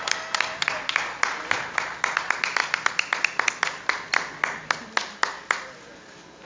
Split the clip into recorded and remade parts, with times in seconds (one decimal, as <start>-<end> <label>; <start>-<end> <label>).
0.0-6.5 recorded